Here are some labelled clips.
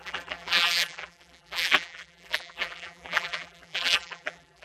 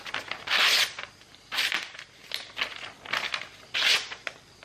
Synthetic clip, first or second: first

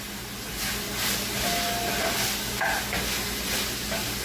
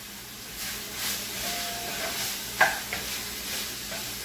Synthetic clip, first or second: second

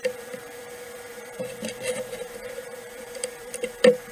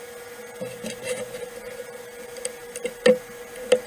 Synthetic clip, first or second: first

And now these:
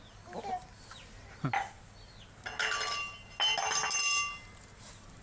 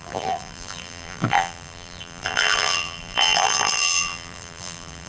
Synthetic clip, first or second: second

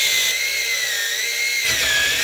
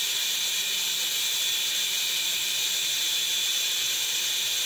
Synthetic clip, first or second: second